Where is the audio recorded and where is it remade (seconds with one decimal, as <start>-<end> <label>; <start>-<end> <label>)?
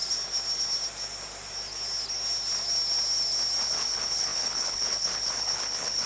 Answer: 0.0-3.7 recorded; 3.7-6.1 remade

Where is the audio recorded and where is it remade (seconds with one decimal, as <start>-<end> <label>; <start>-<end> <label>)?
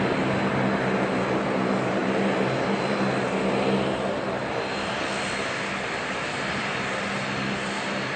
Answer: 0.0-8.2 recorded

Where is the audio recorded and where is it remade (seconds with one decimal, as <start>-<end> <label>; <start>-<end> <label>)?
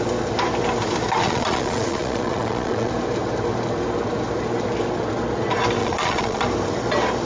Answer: 0.0-1.2 recorded; 1.2-2.9 remade; 2.9-5.8 recorded; 5.8-6.4 remade; 6.4-7.3 recorded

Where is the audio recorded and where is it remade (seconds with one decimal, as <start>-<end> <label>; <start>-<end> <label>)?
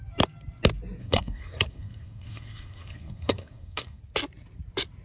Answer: 0.0-1.0 recorded; 1.0-4.0 remade; 4.0-5.0 recorded